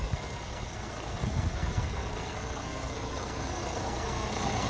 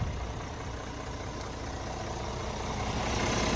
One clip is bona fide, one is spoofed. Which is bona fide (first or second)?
second